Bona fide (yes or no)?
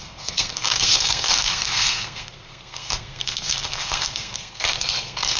no